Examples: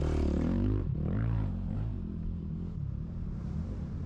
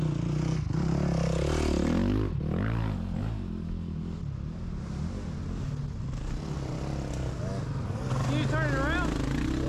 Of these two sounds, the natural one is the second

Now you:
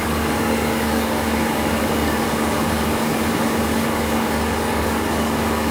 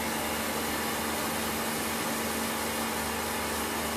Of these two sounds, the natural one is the second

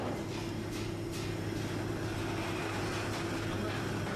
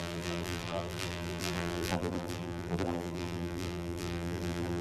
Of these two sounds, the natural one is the first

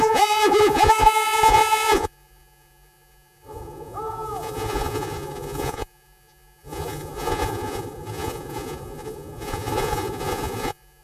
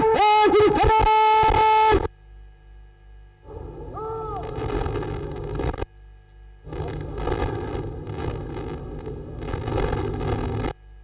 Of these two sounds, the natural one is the second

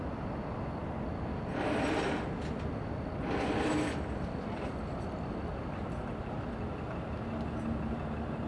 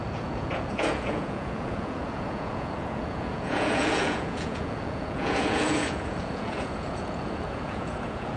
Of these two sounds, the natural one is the first